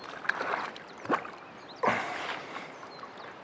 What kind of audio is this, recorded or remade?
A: recorded